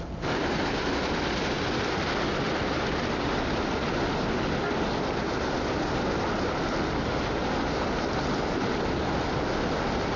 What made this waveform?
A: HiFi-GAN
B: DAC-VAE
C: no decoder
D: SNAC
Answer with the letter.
C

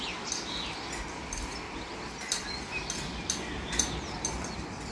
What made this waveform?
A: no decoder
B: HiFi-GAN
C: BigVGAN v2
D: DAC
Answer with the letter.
A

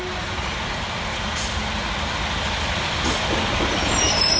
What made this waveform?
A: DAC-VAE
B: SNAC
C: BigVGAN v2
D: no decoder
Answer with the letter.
D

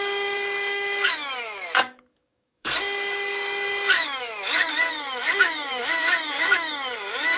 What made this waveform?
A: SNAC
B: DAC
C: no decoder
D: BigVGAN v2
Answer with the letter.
B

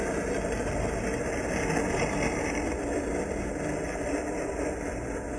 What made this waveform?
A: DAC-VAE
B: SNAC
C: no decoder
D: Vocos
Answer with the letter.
C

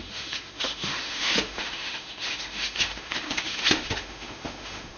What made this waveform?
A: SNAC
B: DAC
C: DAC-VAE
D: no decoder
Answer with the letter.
C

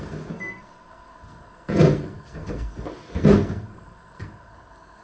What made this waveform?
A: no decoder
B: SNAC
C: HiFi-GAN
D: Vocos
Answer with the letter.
B